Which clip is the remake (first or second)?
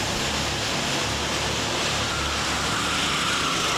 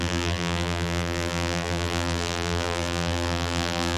second